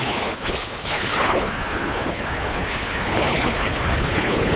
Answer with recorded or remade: remade